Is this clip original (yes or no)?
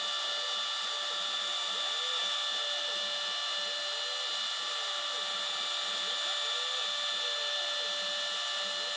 yes